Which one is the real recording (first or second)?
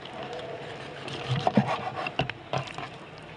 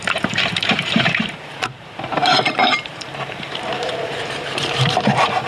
first